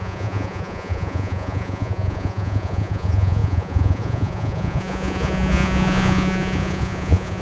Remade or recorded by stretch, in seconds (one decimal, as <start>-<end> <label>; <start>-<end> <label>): 0.0-7.4 remade